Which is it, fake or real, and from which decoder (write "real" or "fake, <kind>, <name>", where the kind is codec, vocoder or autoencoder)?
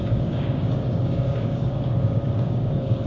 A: fake, codec, DAC